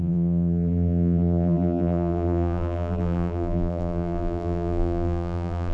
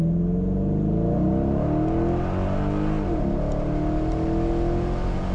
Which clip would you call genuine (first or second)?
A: second